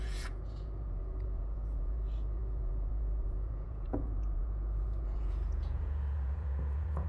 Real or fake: fake